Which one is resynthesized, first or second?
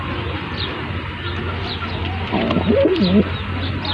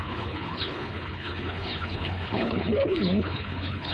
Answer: second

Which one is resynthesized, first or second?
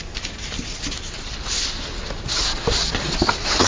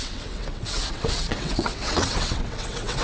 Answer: second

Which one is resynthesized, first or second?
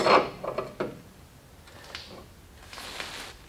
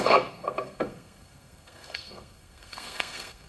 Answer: second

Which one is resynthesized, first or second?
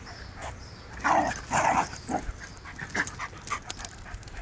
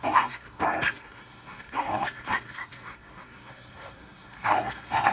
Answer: second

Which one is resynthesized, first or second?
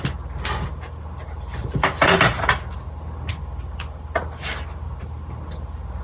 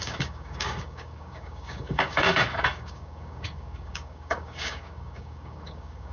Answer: second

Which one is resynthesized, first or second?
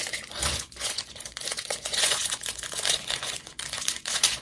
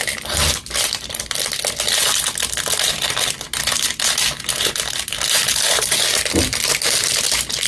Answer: first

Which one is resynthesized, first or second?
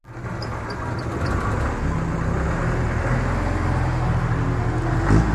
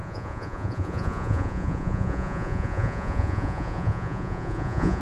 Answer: second